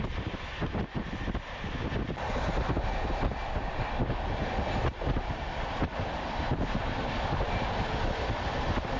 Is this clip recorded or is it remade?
recorded